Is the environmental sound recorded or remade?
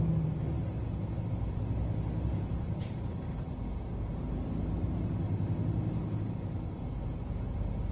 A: recorded